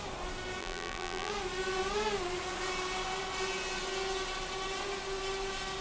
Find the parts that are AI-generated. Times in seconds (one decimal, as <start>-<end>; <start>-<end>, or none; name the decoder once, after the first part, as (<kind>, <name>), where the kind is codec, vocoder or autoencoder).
0.6-1.3 (vocoder, BigVGAN v2)

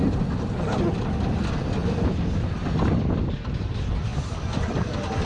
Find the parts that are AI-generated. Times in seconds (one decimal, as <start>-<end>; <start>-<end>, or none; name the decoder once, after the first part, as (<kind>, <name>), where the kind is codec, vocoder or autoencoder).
1.8-2.5 (vocoder, BigVGAN v2)

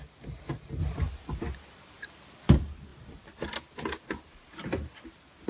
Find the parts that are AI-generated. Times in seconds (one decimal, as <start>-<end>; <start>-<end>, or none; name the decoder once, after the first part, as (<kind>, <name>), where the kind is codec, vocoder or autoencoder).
0.8-2.5 (vocoder, BigVGAN v2)

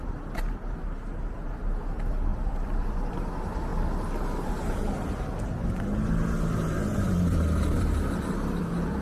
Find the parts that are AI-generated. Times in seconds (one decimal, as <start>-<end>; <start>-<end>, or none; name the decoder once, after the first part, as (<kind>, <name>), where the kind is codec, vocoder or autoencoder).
2.3-3.1 (vocoder, BigVGAN v2); 6.9-8.6